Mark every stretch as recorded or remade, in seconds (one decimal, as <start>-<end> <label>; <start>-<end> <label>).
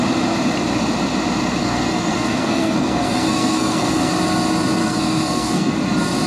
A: 0.0-1.6 recorded; 1.6-4.1 remade; 4.1-4.8 recorded; 4.8-5.7 remade; 5.7-6.3 recorded